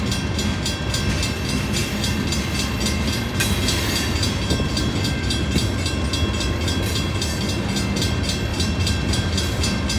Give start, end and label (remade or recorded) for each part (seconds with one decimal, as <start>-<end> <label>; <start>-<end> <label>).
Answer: 0.0-8.5 recorded; 8.5-9.3 remade; 9.3-10.0 recorded